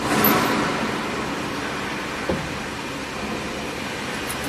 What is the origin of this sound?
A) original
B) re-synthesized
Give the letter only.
A